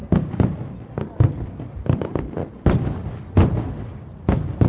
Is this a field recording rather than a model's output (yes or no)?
yes